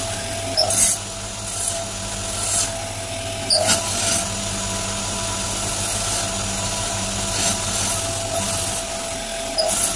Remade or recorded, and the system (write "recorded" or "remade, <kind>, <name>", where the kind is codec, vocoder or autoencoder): recorded